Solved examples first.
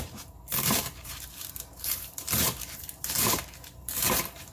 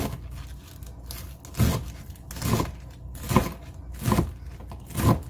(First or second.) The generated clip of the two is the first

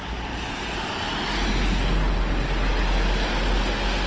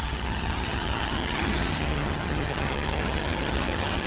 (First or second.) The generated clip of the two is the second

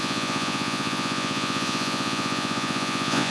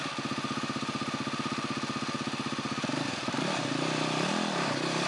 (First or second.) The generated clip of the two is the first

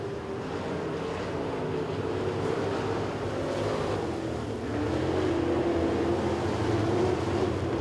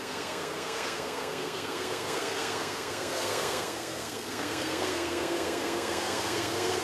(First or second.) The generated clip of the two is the second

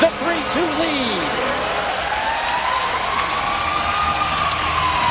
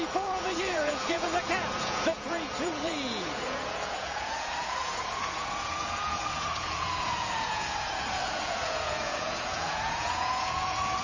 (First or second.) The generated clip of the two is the second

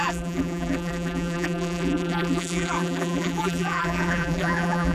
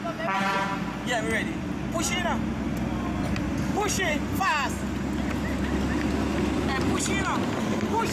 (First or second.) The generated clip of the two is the first